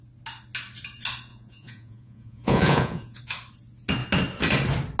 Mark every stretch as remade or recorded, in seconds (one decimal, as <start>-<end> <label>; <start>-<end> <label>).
0.0-1.3 recorded; 1.3-3.2 remade; 3.2-5.0 recorded